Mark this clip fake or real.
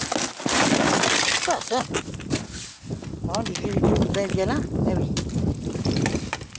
real